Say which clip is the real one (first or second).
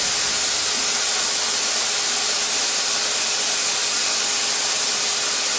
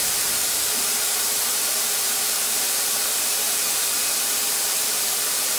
first